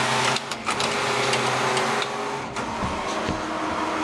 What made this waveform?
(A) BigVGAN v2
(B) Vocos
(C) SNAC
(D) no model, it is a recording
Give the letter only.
D